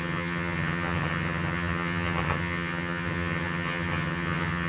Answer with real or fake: fake